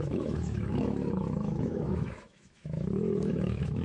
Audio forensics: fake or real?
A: fake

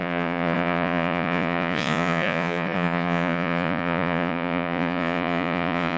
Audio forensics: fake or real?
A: fake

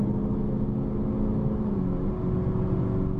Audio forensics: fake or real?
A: real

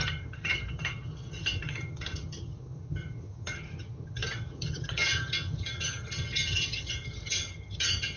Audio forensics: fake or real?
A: fake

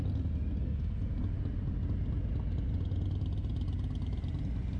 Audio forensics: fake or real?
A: real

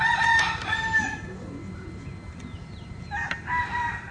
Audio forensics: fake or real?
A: real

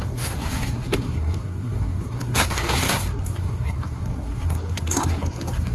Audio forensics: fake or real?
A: fake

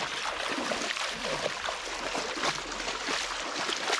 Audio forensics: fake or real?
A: real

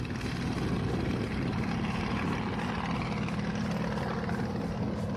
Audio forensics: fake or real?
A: real